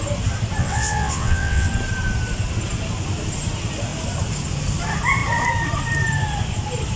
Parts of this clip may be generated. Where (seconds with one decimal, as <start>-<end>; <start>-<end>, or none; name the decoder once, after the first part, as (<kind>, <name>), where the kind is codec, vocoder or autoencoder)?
0.6-1.7 (vocoder, WaveNeXt)